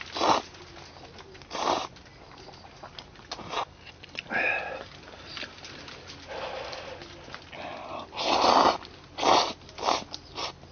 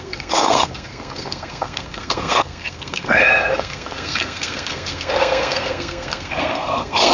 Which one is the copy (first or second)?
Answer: second